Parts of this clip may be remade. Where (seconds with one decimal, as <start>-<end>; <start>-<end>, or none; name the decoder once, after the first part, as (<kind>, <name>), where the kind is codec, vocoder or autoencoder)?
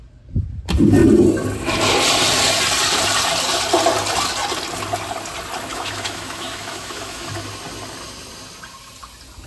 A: 5.7-7.3 (autoencoder, DAC-VAE)